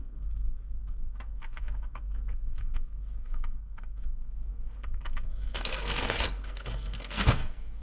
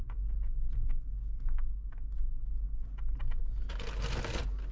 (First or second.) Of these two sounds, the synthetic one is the first